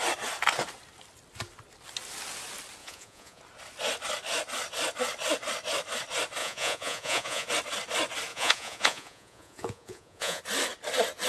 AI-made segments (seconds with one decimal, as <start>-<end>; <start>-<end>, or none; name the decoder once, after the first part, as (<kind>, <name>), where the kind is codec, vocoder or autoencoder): 2.8-3.4 (vocoder, Vocos); 6.4-7.5; 8.3-10.4